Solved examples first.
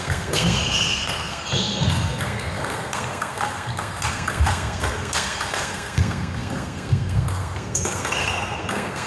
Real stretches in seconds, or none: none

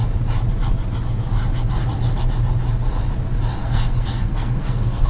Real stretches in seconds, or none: 0.0-3.6